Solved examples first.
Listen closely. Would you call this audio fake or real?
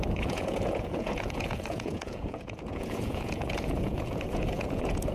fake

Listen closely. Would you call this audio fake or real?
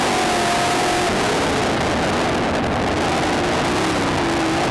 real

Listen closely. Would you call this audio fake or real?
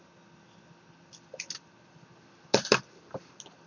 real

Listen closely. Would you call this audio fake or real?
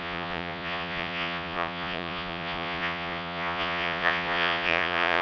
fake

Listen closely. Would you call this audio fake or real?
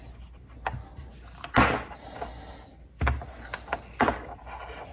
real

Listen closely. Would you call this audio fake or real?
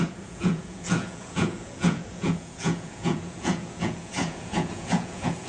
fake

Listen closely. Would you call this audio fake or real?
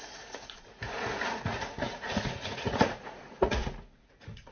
fake